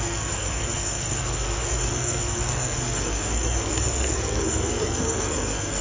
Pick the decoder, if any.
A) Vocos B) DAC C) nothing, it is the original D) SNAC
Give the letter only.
D